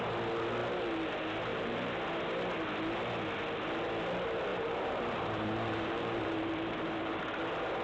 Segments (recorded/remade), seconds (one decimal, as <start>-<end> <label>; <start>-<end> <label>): 0.0-1.5 recorded; 1.5-2.0 remade; 2.0-4.5 recorded; 4.5-7.2 remade; 7.2-7.8 recorded